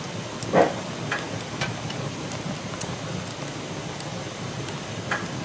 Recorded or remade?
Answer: recorded